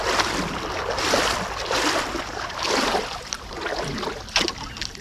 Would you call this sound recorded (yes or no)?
yes